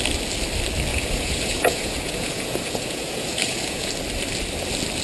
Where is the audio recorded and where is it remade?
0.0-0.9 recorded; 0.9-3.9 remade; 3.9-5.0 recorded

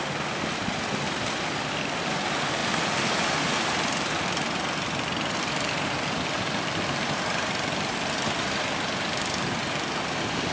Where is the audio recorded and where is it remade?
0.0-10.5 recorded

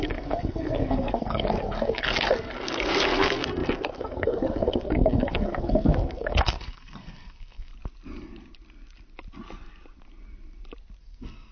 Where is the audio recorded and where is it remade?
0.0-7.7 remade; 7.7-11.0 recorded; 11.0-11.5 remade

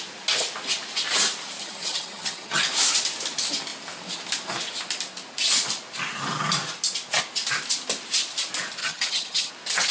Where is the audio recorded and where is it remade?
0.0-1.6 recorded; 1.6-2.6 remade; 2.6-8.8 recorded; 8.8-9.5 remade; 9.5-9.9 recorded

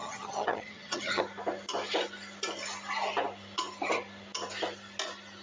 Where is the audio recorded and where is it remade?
0.0-1.2 remade; 1.2-5.4 recorded

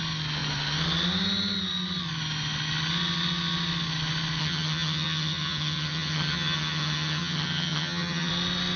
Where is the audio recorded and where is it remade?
0.0-4.4 recorded; 4.4-8.3 remade; 8.3-8.8 recorded

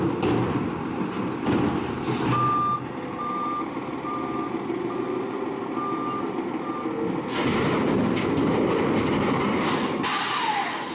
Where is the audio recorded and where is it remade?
0.0-3.9 recorded; 3.9-4.7 remade; 4.7-7.5 recorded; 7.5-10.2 remade; 10.2-10.9 recorded